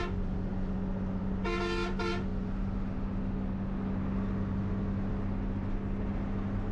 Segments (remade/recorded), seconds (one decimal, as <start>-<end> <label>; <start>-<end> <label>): 0.0-6.7 recorded